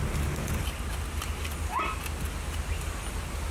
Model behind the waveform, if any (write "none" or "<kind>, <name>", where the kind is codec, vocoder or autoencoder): none